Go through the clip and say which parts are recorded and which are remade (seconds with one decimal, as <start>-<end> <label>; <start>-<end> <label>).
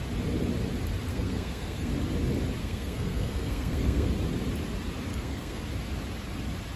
0.0-1.1 recorded; 1.1-1.9 remade; 1.9-2.6 recorded; 2.6-4.1 remade; 4.1-5.1 recorded; 5.1-5.6 remade; 5.6-6.8 recorded